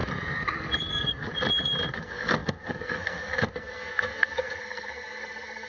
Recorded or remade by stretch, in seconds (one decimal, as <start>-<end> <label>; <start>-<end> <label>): 0.0-0.9 recorded; 0.9-1.3 remade; 1.3-1.9 recorded; 1.9-5.7 remade